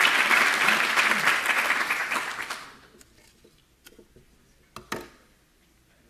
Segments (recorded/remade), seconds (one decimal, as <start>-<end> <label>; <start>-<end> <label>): 0.0-6.1 recorded